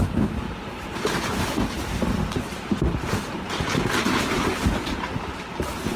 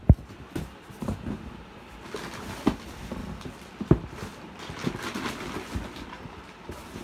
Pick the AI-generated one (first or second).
first